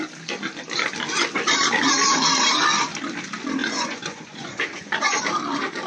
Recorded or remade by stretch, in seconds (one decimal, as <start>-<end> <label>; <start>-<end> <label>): 0.0-3.6 recorded; 3.6-5.2 remade; 5.2-5.9 recorded